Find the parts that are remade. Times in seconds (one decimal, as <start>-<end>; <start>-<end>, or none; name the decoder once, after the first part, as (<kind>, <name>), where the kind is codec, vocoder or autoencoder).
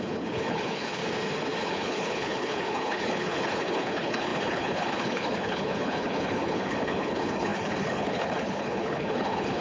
0.0-1.0 (codec, HILCodec); 1.6-9.6